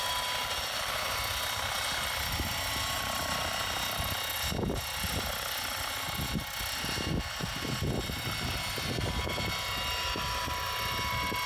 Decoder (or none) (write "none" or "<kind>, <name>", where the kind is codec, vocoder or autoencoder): none